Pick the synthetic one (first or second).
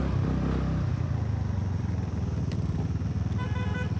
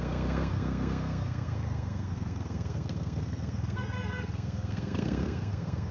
second